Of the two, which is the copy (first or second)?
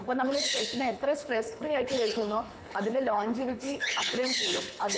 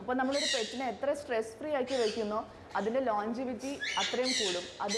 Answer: first